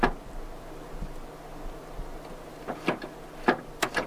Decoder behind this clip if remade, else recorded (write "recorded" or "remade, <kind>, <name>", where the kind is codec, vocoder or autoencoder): recorded